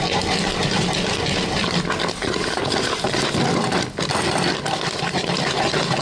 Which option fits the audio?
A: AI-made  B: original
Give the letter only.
B